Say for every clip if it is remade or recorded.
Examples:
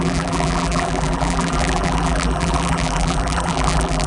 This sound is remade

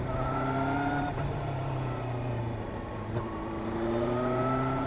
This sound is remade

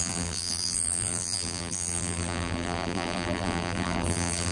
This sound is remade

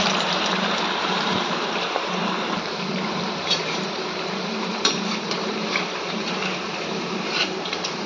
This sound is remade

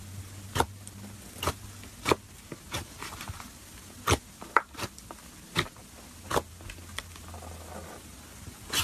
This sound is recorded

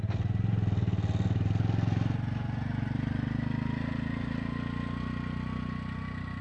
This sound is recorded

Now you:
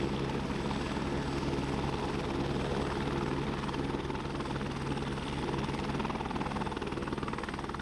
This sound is recorded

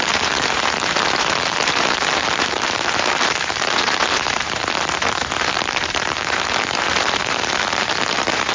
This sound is remade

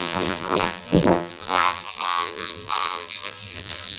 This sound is remade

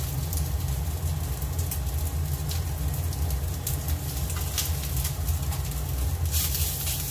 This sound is recorded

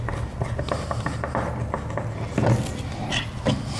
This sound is recorded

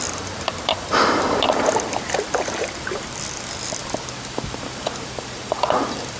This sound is remade